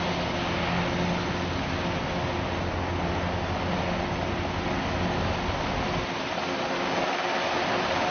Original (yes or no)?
yes